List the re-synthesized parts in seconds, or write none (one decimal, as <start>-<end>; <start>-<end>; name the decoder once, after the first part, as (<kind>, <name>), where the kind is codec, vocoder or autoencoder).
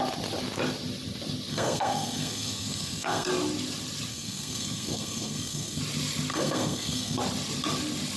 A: 1.5-3.3 (codec, SNAC); 4.1-5.8; 6.3-7.2